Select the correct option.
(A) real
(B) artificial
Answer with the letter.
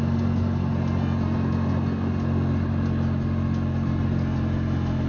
A